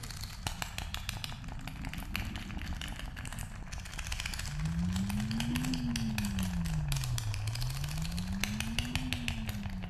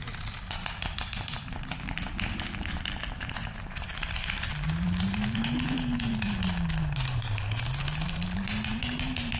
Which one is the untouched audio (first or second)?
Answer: first